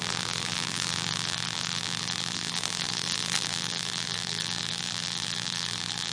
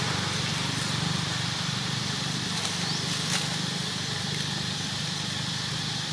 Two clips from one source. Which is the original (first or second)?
second